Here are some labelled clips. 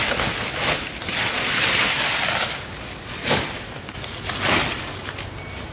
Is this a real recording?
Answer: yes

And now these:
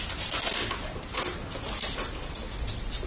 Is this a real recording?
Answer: yes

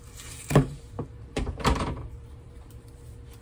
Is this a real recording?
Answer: no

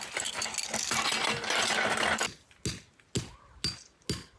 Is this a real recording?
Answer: yes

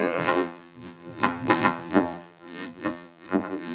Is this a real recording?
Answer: no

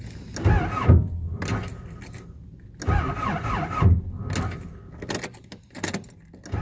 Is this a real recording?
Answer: yes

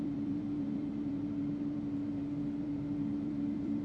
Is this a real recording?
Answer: no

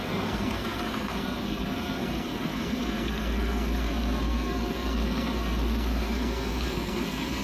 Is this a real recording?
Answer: no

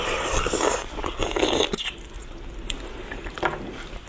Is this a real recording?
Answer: yes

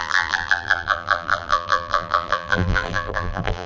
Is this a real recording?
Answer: no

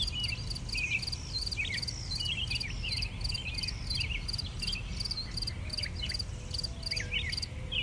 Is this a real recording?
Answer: yes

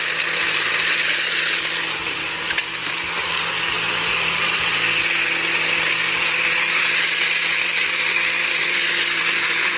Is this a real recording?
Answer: yes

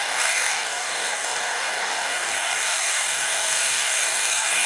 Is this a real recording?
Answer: no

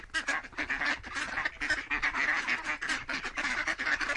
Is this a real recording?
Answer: yes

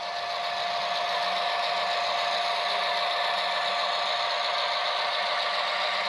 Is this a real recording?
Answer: yes